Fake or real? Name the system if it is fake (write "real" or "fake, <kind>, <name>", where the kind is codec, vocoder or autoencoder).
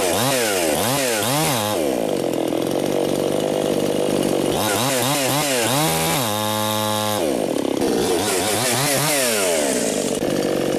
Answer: real